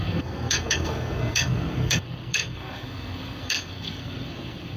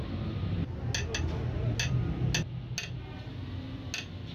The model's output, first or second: first